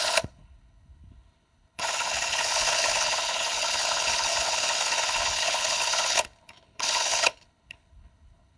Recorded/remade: remade